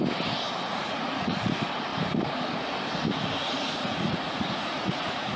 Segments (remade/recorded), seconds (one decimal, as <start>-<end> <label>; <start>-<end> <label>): 0.0-0.7 recorded; 0.7-1.5 remade; 1.5-3.4 recorded; 3.4-5.4 remade